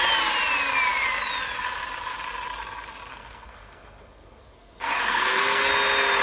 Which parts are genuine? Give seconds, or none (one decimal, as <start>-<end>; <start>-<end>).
0.0-3.1; 5.7-6.2